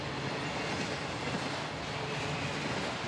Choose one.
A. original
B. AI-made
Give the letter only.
A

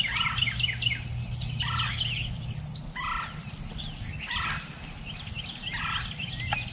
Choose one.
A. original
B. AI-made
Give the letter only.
A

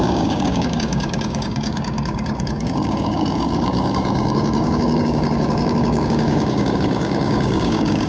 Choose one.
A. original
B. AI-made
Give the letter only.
B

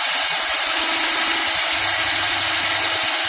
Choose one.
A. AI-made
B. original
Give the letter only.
B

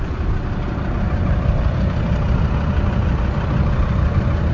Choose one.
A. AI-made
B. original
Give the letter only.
B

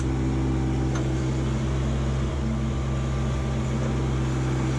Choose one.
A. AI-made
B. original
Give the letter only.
B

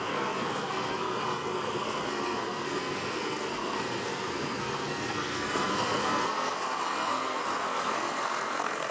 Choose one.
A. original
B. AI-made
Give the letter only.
B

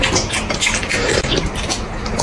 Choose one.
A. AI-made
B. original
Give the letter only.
B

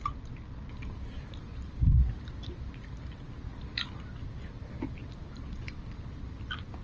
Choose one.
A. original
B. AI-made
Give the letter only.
A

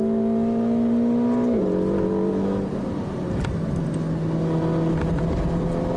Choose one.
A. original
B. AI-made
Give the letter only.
A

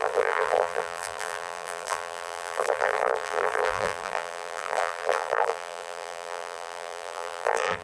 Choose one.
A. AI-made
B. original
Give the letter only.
A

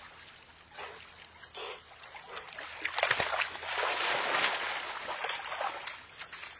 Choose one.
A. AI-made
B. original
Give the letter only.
B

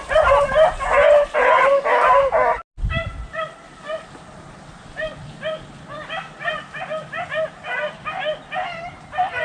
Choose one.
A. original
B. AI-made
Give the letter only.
A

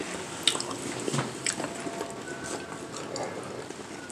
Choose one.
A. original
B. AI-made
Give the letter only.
A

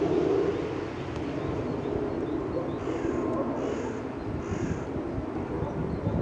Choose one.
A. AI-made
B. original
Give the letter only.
B